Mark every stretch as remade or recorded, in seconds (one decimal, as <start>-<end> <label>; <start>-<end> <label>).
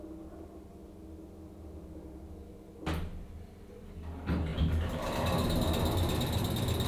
0.0-4.5 recorded; 4.5-5.2 remade; 5.2-6.9 recorded